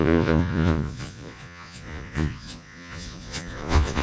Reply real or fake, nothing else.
fake